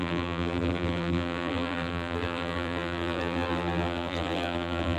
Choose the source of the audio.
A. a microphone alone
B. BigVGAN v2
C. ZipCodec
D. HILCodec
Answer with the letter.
B